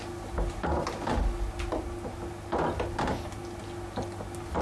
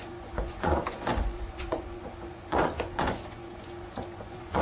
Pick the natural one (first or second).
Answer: first